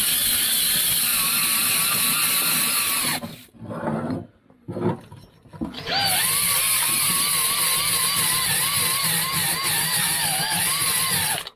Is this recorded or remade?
recorded